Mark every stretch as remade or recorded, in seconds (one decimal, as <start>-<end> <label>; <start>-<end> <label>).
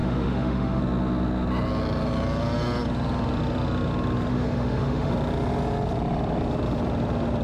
0.0-0.8 remade; 0.8-4.3 recorded; 4.3-5.1 remade; 5.1-7.4 recorded